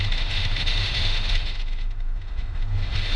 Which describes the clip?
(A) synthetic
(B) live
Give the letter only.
A